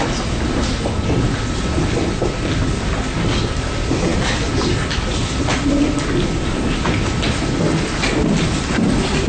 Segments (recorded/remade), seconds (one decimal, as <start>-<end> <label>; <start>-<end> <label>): 0.0-9.3 recorded